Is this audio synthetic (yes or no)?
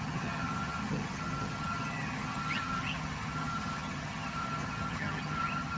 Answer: yes